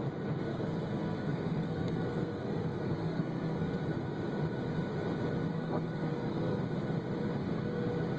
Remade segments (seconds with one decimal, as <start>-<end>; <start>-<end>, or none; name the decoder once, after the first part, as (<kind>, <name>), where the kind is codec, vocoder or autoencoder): 0.4-3.7 (codec, SNAC); 5.5-6.6